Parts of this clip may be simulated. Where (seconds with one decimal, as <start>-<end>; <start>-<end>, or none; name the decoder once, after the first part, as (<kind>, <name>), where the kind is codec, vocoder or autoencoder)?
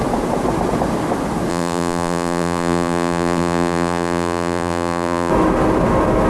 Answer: 1.5-5.3 (vocoder, BigVGAN v2)